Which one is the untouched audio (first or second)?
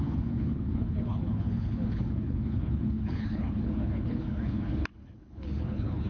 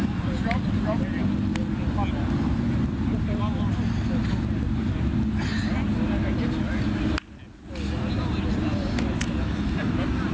second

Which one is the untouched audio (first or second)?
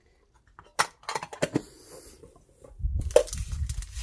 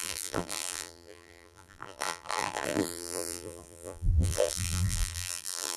first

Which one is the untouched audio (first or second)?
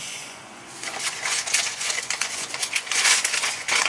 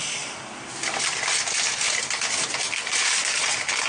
second